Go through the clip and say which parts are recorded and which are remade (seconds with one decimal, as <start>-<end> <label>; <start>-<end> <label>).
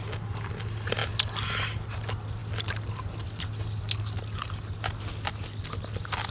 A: 0.0-6.3 recorded